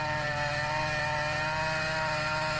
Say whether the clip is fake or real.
real